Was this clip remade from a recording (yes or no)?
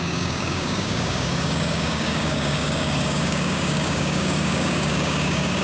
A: yes